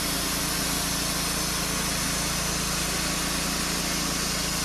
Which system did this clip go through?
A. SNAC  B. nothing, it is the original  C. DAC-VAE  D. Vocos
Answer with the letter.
B